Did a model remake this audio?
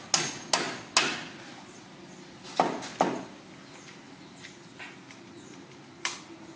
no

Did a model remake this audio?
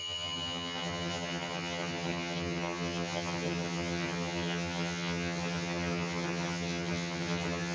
yes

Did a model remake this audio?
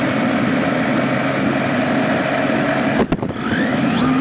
no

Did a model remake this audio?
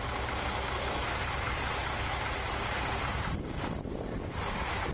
no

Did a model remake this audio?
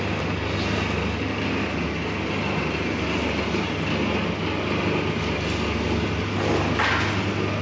no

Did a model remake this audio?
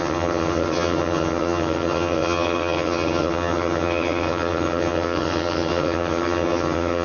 yes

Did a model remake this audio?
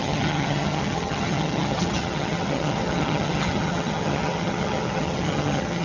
yes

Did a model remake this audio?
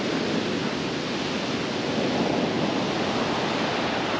no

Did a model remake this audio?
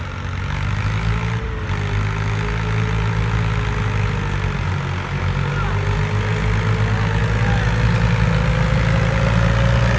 no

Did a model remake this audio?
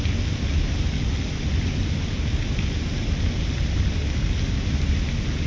no